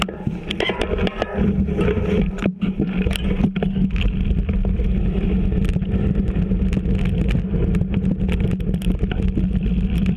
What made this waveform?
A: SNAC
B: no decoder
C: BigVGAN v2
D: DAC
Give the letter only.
B